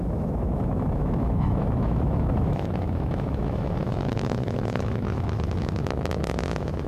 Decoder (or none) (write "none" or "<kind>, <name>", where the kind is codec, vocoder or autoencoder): autoencoder, DAC-VAE